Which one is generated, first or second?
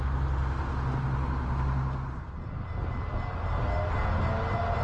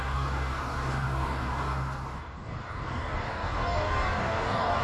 second